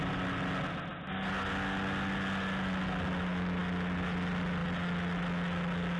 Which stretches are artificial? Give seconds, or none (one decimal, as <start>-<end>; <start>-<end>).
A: none